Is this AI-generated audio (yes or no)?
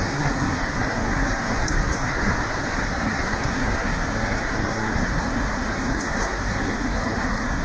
yes